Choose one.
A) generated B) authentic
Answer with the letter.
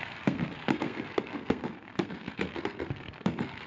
A